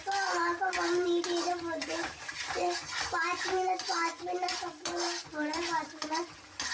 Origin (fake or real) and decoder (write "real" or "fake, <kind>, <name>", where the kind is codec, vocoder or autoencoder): fake, vocoder, BigVGAN v2